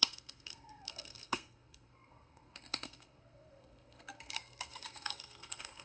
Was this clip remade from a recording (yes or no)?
yes